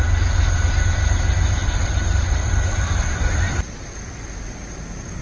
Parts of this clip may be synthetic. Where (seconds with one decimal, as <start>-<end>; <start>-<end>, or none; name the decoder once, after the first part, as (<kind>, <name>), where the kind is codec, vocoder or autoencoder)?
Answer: 1.6-4.7 (vocoder, BigVGAN v2)